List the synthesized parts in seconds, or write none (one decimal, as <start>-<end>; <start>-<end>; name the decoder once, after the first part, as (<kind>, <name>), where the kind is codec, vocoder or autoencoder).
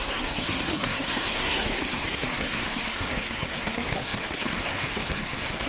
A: 0.0-5.7 (codec, SNAC)